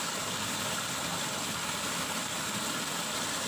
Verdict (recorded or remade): recorded